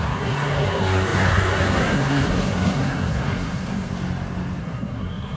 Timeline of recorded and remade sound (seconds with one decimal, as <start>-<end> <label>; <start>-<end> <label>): 0.0-3.9 remade; 3.9-4.6 recorded; 4.6-5.4 remade